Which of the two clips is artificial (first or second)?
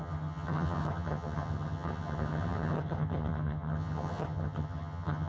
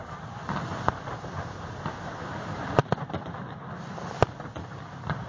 first